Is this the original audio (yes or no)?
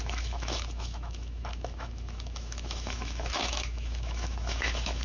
no